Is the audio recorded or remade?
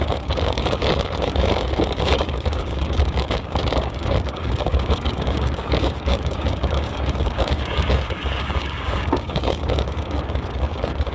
remade